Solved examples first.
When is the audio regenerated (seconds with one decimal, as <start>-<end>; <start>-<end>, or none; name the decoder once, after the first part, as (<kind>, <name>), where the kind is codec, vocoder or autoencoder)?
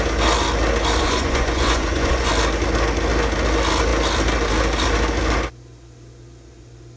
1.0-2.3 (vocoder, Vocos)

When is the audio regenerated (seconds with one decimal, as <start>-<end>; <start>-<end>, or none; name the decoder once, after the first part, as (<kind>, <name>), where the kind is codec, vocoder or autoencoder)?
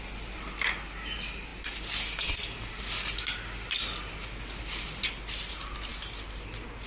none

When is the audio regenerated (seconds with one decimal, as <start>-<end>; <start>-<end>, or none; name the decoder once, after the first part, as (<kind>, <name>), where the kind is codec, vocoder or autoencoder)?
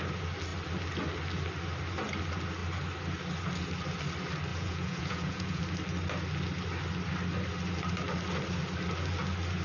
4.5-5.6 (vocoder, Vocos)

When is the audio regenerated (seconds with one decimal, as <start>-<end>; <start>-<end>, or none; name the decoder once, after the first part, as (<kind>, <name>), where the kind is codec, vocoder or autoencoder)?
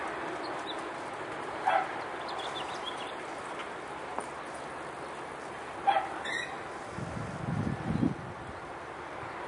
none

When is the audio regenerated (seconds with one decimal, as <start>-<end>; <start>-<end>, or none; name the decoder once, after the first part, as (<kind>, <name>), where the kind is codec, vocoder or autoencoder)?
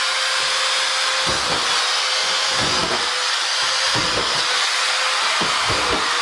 2.2-2.8 (vocoder, Vocos)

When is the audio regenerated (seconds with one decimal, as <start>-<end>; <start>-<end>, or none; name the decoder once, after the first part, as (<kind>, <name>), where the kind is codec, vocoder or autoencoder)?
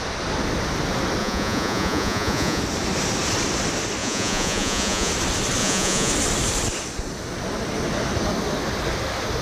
1.2-2.6 (vocoder, Vocos); 4.0-5.1; 5.6-6.1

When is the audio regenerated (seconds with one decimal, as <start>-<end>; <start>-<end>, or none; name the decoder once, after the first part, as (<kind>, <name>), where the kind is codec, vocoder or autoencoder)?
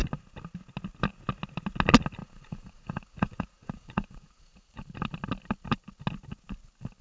2.2-4.8 (vocoder, Vocos)